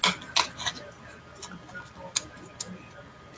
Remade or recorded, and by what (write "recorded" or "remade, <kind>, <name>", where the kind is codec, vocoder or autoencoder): recorded